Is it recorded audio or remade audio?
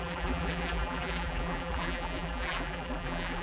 remade